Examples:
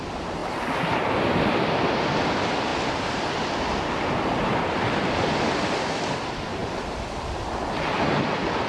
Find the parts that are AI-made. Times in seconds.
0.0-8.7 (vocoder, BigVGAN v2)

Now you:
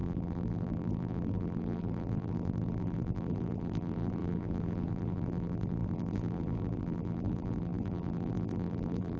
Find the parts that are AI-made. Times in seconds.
0.0-9.2 (vocoder, BigVGAN v2)

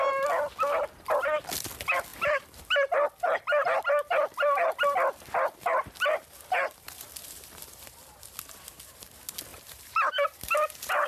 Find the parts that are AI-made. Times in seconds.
9.5-10.1 (vocoder, BigVGAN v2)